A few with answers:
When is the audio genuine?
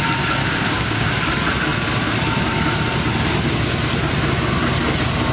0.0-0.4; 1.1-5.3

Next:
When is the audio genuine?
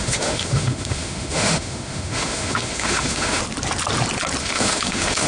3.4-4.4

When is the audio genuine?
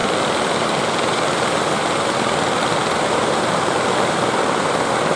0.0-5.2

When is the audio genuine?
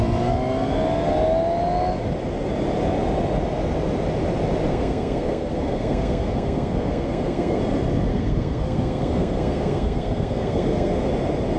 0.0-4.7; 7.6-8.1; 11.1-11.6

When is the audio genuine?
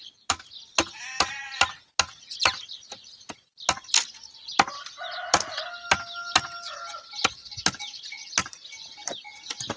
0.0-2.4; 3.5-9.8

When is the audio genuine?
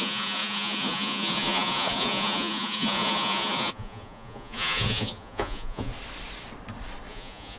5.9-7.1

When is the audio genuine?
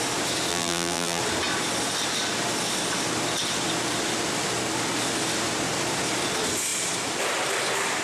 0.0-0.5; 1.2-8.0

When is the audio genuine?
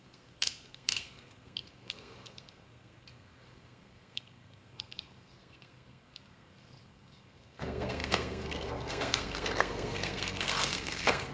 none